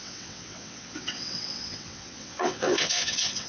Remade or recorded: remade